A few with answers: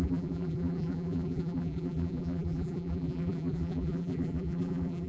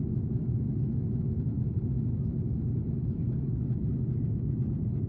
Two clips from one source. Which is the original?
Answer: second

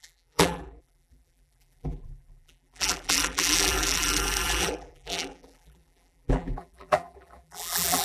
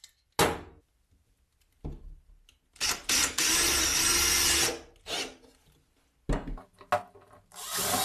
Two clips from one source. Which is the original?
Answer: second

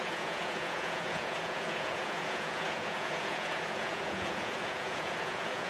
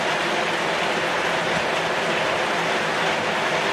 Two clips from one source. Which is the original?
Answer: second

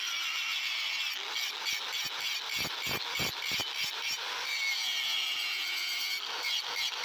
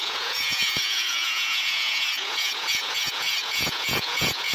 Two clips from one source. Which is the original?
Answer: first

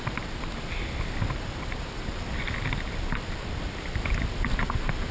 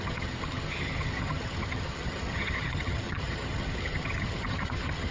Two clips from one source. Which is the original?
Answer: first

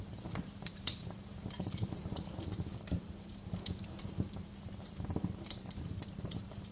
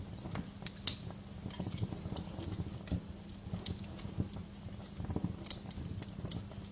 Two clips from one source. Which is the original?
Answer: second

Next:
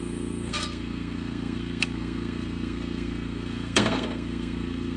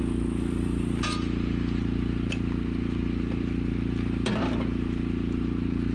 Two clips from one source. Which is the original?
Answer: second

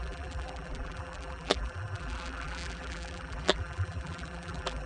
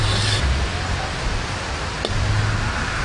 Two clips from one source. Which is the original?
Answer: second